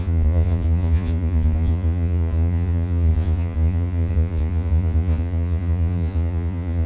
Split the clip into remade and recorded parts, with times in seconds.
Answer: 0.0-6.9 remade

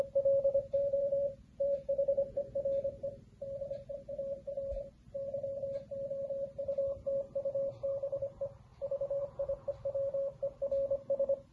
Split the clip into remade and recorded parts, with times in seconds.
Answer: 0.0-0.5 recorded; 0.5-2.4 remade; 2.4-8.7 recorded; 8.7-9.7 remade; 9.7-11.5 recorded

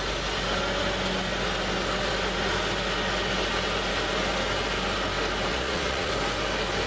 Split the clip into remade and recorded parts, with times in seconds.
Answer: 0.0-5.5 recorded; 5.5-6.1 remade; 6.1-6.9 recorded

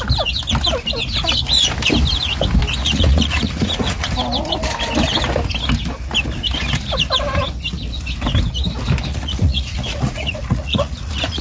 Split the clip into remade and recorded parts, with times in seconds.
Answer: 0.0-2.8 recorded; 2.8-4.1 remade; 4.1-9.1 recorded; 9.1-11.4 remade

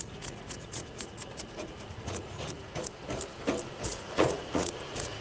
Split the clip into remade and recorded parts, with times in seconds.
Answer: 0.0-2.9 remade; 2.9-3.8 recorded; 3.8-5.2 remade

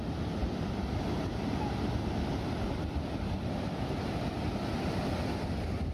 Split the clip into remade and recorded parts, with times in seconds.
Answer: 0.0-5.9 recorded